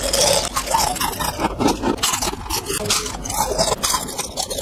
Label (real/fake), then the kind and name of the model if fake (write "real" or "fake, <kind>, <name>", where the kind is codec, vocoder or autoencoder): real